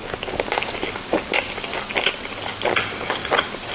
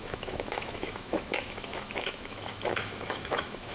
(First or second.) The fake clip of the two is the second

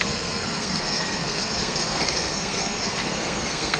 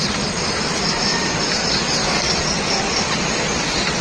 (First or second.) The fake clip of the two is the first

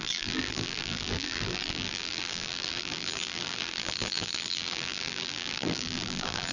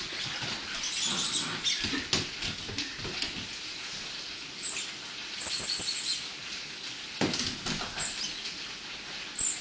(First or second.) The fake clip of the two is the first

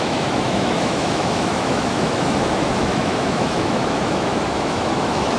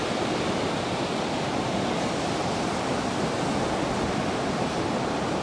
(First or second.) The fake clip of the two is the first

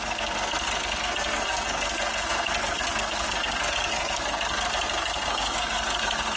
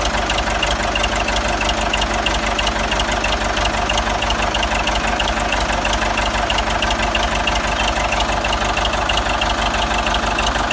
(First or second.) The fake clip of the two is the first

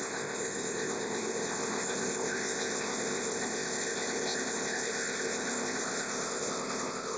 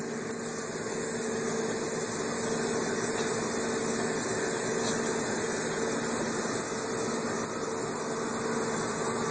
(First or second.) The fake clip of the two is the first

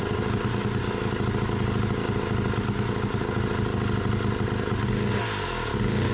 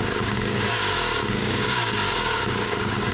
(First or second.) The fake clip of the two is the second